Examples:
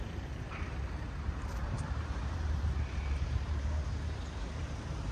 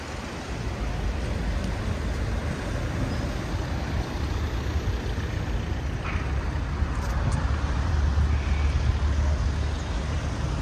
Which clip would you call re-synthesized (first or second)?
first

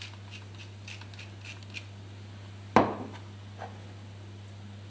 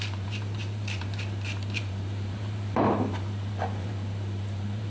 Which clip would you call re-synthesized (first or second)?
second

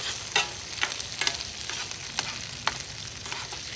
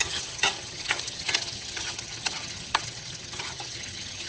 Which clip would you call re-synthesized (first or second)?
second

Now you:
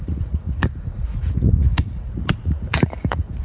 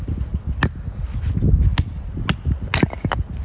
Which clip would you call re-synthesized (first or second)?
first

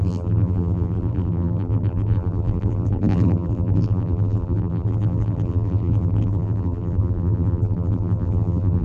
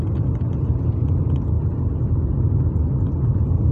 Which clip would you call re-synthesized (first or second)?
first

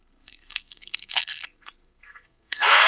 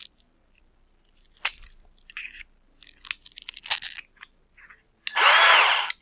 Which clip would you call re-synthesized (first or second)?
first